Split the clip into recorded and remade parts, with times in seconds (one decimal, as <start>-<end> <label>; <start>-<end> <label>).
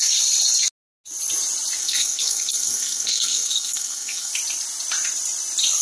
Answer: 0.0-1.8 recorded; 1.8-4.3 remade; 4.3-5.8 recorded